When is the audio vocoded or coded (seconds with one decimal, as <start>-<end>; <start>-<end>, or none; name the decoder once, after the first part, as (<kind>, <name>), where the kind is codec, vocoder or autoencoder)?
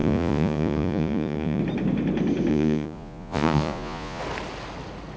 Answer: 0.0-1.6 (vocoder, Vocos); 2.5-4.2